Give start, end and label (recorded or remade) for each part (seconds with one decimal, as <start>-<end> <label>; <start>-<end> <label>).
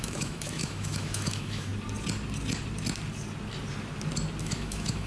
0.0-1.7 remade; 1.7-4.4 recorded; 4.4-5.1 remade